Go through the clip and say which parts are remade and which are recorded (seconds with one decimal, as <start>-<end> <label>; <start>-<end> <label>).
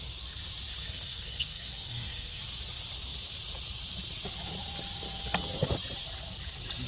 0.0-0.8 recorded; 0.8-2.4 remade; 2.4-6.9 recorded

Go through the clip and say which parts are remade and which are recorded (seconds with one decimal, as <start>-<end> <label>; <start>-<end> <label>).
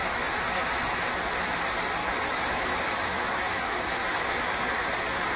0.0-1.0 remade; 1.0-2.0 recorded; 2.0-4.2 remade; 4.2-5.4 recorded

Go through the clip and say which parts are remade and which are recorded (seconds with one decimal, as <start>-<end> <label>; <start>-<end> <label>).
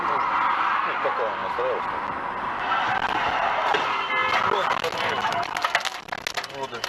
0.0-6.9 recorded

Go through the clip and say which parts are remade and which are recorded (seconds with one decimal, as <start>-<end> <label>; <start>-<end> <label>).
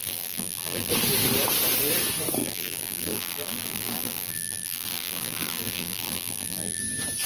0.0-0.9 remade; 0.9-2.4 recorded; 2.4-6.8 remade; 6.8-7.3 recorded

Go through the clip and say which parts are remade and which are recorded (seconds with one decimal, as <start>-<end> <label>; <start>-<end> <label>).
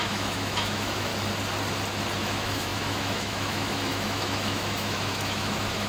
0.0-1.1 remade; 1.1-2.2 recorded; 2.2-5.9 remade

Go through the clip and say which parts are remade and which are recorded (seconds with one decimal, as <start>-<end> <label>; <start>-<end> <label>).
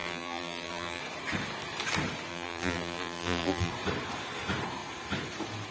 0.0-1.0 remade; 1.0-2.3 recorded; 2.3-3.7 remade; 3.7-5.7 recorded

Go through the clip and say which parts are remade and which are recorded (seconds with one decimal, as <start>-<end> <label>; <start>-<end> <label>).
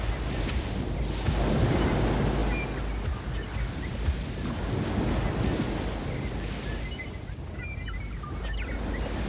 0.0-9.3 recorded